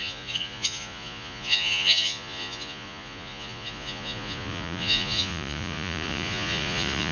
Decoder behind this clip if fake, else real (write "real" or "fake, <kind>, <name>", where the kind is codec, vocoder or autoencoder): fake, vocoder, Vocos